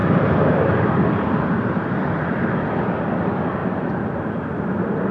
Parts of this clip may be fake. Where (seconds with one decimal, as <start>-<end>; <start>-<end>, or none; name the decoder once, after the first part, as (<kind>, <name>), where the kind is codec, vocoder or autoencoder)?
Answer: 0.0-5.1 (vocoder, BigVGAN v2)